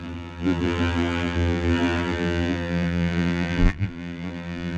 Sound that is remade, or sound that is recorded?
remade